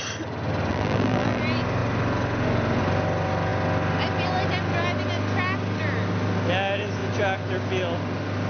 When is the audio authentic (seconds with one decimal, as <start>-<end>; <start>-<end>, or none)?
0.0-0.7; 1.4-8.5